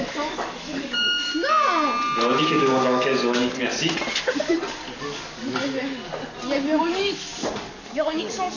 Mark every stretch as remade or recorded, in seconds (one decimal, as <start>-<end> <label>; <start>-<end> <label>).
0.0-1.3 remade; 1.3-2.4 recorded; 2.4-3.6 remade; 3.6-4.1 recorded; 4.1-5.4 remade; 5.4-6.8 recorded; 6.8-8.6 remade